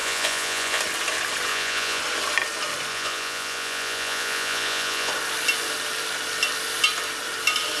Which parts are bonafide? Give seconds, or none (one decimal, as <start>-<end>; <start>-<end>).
0.8-1.5; 2.0-2.9; 5.1-7.8